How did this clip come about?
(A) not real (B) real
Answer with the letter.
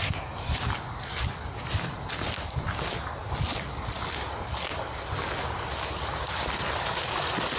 B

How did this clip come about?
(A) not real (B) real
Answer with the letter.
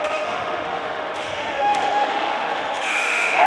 A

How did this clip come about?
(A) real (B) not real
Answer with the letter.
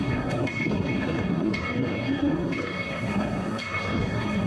B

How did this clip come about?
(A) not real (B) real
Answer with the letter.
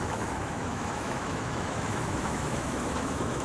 A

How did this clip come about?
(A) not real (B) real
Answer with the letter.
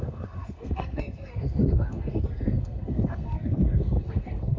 A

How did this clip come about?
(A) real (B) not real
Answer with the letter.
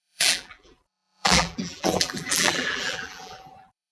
B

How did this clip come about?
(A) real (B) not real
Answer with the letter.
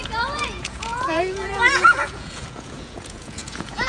B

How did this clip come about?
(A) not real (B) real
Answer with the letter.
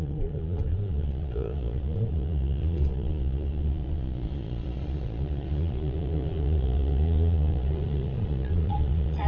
A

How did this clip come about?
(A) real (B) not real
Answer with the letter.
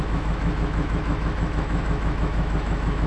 B